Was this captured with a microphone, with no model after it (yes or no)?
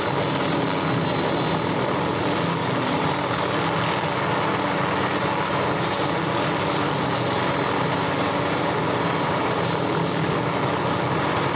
yes